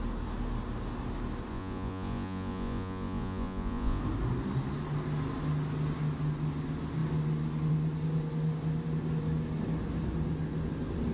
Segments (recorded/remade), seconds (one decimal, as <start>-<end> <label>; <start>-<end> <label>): 0.0-1.5 recorded; 1.5-4.0 remade; 4.0-11.1 recorded